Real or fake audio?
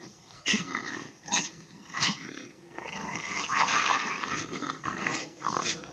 fake